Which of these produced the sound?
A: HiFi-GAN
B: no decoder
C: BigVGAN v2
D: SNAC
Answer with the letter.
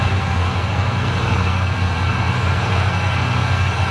D